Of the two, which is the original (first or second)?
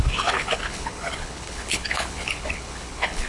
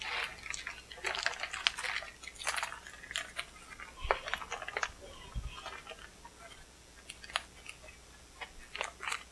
second